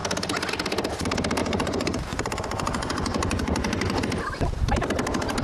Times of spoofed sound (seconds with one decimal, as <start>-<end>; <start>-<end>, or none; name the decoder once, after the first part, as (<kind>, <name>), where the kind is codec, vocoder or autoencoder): 1.4-4.0 (vocoder, Vocos)